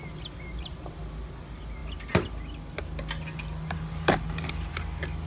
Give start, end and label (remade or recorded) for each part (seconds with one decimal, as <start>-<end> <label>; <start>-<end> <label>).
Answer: 0.0-5.3 recorded